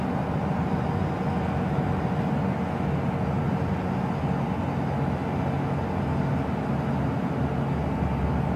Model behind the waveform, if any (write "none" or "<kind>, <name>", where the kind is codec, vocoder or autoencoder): none